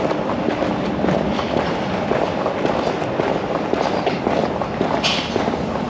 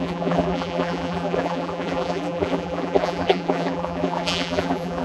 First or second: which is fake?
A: second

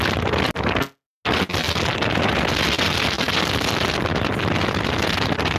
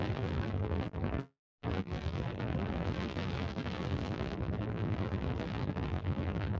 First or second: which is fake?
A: second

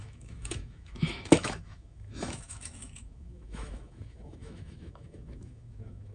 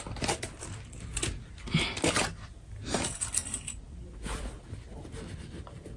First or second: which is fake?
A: first